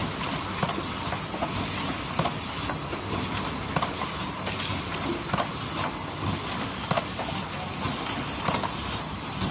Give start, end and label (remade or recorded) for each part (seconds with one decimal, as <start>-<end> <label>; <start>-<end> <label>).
0.0-9.5 recorded